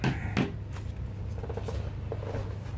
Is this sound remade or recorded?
recorded